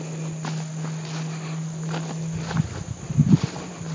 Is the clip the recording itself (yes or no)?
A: yes